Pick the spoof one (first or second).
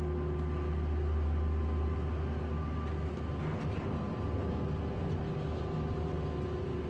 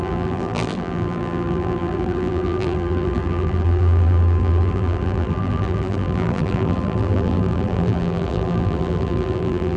second